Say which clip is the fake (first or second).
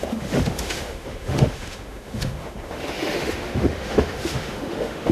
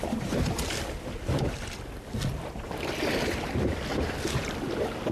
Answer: first